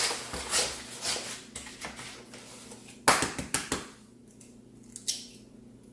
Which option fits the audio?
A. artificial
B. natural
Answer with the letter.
B